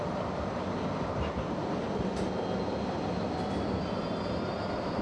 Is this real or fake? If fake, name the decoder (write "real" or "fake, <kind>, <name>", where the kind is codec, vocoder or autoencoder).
real